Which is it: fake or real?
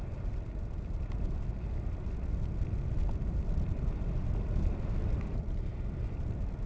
real